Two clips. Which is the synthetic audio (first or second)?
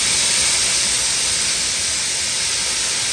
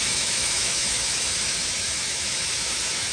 second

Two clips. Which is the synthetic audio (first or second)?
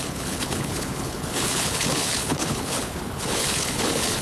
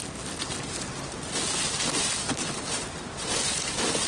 first